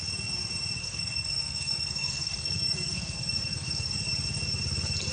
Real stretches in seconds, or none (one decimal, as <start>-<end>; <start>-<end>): 0.0-0.8; 3.9-5.1